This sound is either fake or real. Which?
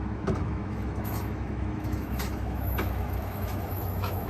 fake